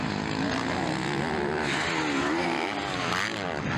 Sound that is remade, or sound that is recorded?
recorded